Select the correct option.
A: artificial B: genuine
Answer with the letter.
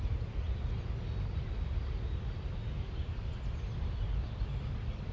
B